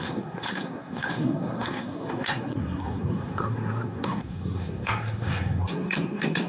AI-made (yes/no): yes